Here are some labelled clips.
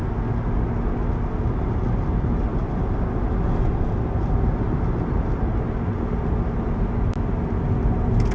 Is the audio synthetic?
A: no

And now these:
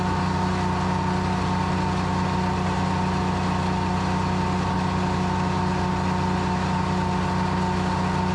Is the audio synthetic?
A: no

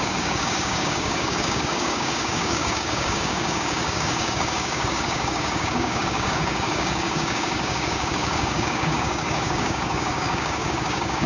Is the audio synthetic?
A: yes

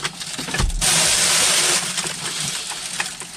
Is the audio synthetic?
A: no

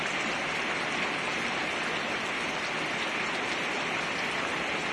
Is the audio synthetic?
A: no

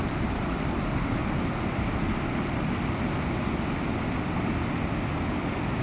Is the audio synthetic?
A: no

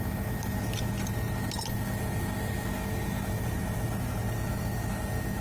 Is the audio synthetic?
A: no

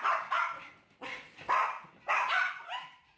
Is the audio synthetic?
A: no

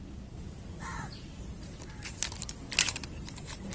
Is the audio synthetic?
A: yes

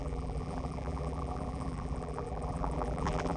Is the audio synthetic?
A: yes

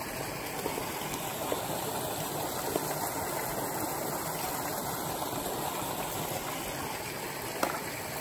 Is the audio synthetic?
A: no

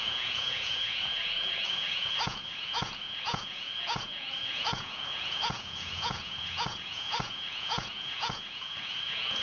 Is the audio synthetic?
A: yes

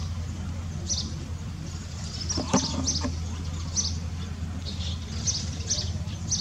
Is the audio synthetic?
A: no